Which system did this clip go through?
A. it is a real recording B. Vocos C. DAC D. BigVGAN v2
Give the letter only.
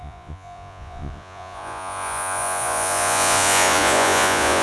B